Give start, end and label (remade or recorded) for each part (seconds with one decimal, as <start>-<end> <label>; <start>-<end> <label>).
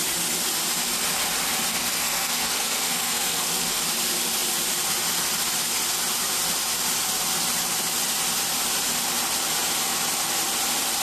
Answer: 0.0-1.7 recorded; 1.7-3.8 remade; 3.8-11.0 recorded